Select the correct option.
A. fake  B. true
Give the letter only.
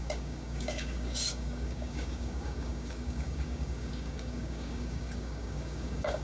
A